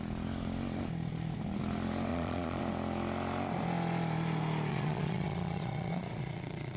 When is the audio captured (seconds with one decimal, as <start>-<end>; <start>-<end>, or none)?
0.0-2.1; 2.6-4.7